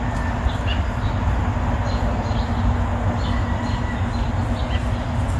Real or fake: real